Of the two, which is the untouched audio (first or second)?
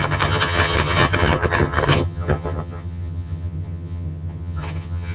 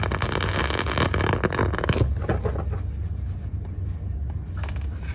second